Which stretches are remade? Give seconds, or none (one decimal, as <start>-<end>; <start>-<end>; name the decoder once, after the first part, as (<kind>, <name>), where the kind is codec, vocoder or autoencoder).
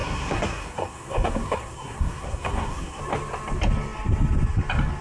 0.0-3.0 (codec, SNAC)